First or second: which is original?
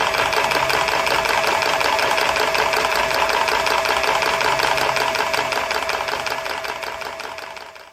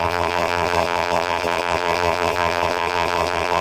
first